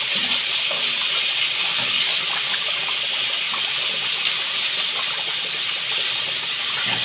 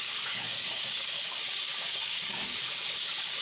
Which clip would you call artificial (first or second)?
second